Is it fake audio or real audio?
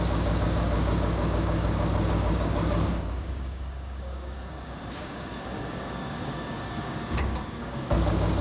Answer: fake